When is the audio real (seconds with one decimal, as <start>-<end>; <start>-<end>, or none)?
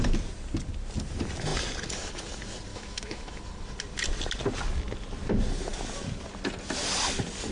0.0-2.7; 3.4-7.5